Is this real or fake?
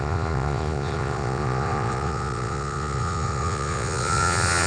fake